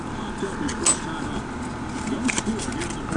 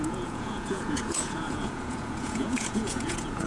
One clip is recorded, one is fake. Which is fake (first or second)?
second